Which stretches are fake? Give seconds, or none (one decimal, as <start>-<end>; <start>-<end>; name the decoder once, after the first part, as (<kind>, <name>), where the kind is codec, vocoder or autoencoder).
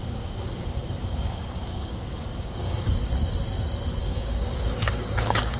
0.0-3.1 (codec, DAC); 4.0-5.6